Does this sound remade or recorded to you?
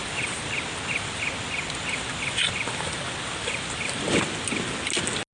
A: recorded